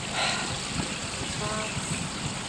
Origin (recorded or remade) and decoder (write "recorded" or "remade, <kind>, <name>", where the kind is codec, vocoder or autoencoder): recorded